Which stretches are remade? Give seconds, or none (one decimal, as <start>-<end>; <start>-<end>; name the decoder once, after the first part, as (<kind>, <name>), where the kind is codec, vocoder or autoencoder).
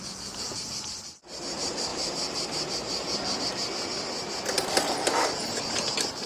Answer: none